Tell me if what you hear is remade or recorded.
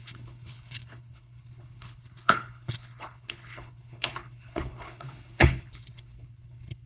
remade